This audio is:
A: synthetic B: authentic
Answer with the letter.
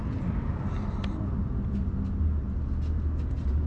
B